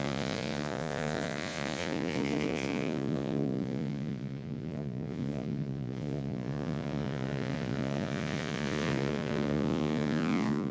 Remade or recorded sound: remade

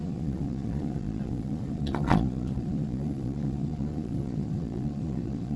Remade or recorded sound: remade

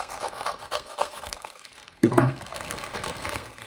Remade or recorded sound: remade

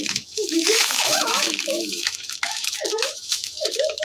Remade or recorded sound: remade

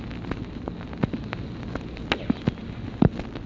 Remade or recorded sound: recorded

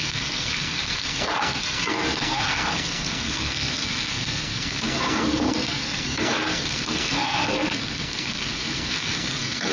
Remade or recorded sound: remade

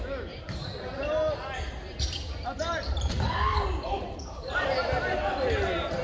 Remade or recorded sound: remade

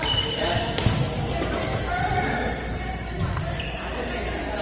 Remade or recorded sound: recorded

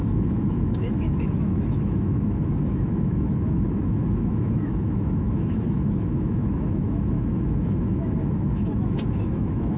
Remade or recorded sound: remade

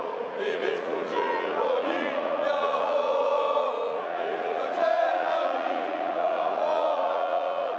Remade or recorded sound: remade